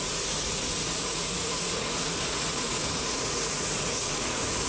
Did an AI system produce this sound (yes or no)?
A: yes